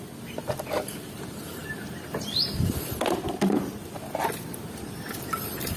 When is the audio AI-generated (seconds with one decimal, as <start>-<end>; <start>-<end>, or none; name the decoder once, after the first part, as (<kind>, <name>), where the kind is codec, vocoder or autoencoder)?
0.0-5.8 (vocoder, BigVGAN v2)